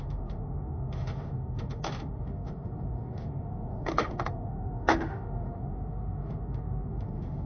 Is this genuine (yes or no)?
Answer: no